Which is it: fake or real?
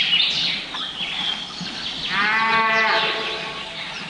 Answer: real